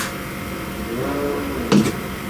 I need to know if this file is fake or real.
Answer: real